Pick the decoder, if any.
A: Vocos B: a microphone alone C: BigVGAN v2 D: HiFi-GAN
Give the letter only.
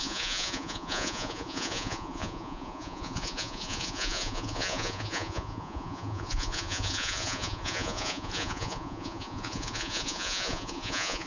A